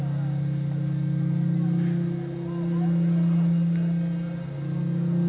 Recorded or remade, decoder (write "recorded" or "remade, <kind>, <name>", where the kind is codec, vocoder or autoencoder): recorded